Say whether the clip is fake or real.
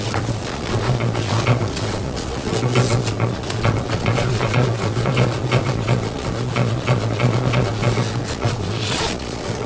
fake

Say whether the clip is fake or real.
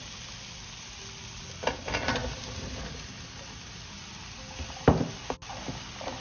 real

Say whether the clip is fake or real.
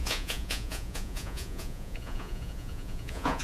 fake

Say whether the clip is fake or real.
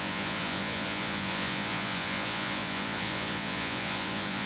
fake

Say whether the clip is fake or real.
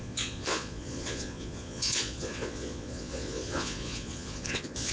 fake